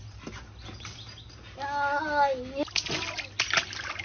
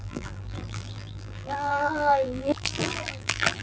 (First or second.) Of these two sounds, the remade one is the second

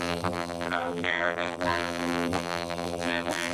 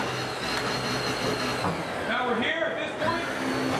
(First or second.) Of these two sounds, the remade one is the first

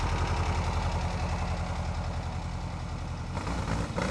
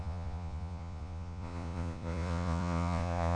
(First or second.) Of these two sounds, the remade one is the second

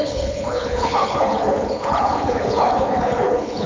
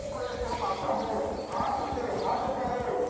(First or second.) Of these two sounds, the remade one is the first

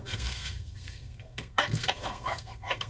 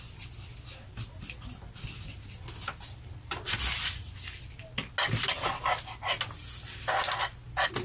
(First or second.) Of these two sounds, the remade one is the first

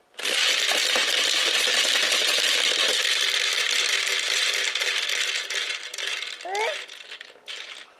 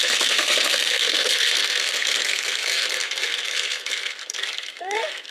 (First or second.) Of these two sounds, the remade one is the second